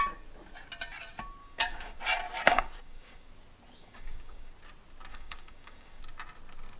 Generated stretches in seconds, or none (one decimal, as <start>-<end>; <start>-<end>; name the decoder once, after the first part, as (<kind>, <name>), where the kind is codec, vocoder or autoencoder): 1.4-2.0 (codec, DAC); 2.5-3.3; 3.8-4.5; 5.1-6.0